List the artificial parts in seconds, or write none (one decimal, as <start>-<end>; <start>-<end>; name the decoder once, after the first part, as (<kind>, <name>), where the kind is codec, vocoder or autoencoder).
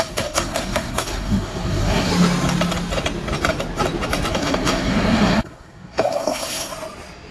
0.0-2.1 (codec, SNAC); 4.3-6.7